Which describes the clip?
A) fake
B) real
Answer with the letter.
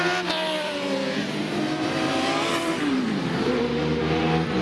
A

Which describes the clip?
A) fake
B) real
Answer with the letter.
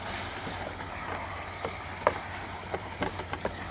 B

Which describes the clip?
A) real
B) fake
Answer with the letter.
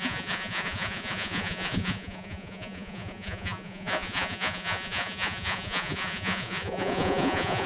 B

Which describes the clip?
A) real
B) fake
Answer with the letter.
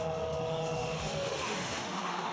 B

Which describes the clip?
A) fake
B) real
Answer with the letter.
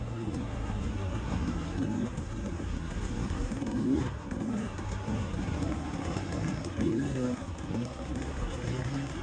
A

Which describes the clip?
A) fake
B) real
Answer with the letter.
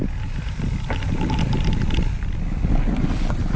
B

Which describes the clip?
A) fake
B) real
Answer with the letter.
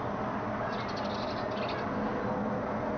B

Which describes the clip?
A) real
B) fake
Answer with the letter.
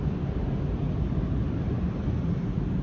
A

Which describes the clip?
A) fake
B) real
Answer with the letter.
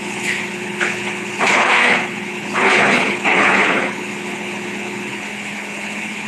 A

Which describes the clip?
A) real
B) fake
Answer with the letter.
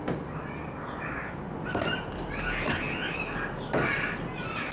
A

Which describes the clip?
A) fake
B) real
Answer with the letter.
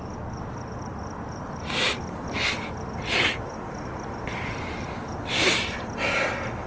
B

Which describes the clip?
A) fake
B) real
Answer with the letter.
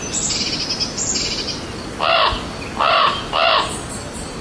B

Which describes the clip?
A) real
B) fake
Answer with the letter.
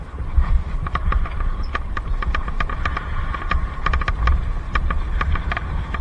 B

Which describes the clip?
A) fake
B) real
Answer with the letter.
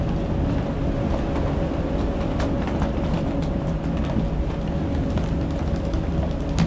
B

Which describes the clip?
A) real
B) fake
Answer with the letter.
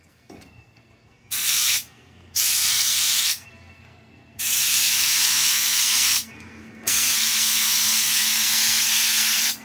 B